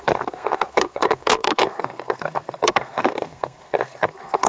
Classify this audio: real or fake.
fake